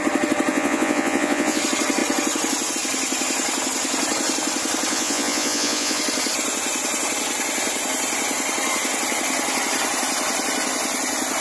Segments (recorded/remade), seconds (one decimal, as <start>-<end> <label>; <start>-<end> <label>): 0.0-0.5 recorded; 0.5-1.6 remade; 1.6-4.9 recorded; 4.9-6.0 remade; 6.0-11.4 recorded